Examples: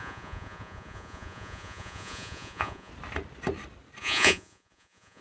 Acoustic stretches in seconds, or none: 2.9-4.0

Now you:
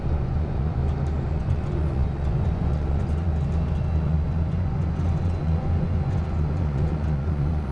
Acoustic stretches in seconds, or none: 0.8-1.3; 3.3-3.8

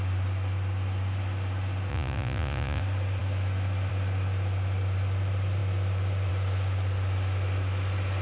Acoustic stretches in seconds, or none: 0.0-1.9; 2.8-8.2

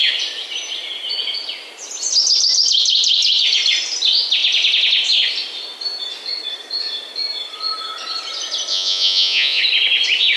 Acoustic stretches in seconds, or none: 0.0-8.7; 9.6-10.4

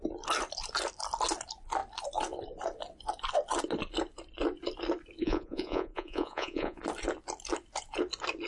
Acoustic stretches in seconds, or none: 0.0-5.2; 6.8-8.5